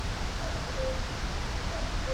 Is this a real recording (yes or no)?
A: yes